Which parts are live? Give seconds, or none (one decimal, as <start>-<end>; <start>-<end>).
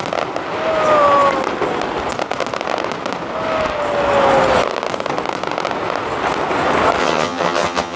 0.0-7.0